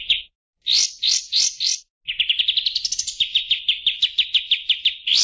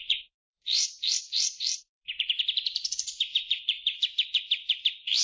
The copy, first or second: second